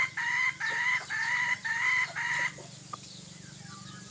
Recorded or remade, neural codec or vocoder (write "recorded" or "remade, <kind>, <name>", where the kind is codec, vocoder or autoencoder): remade, vocoder, BigVGAN v2